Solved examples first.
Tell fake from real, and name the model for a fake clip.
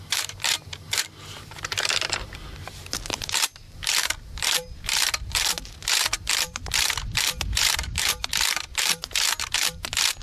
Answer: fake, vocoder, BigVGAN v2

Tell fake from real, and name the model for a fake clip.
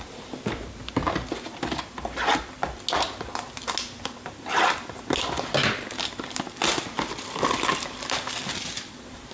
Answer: real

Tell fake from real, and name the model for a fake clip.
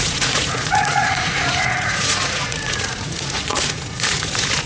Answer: fake, vocoder, Vocos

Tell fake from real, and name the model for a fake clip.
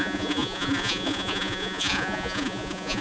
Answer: fake, vocoder, Vocos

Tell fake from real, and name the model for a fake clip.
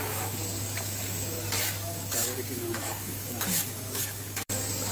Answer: fake, codec, DAC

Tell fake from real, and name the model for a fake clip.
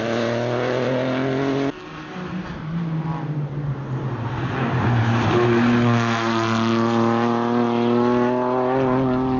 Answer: real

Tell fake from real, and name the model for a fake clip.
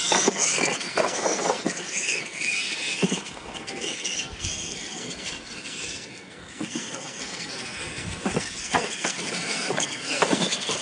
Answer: fake, codec, SNAC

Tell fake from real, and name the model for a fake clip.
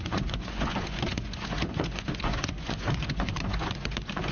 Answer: fake, vocoder, Vocos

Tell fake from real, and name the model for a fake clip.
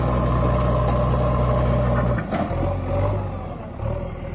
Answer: real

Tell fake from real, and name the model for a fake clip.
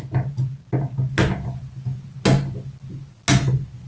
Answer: real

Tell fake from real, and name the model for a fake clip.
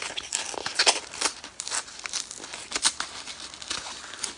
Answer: real